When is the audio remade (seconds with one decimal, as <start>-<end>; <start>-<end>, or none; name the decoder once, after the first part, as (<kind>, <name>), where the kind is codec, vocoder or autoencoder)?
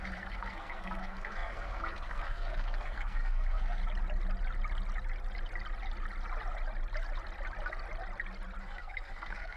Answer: 0.0-3.8 (codec, SNAC); 8.6-9.6